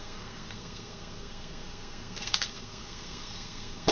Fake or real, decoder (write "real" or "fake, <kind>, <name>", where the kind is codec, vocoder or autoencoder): fake, codec, SNAC